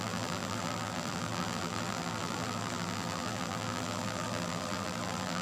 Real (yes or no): no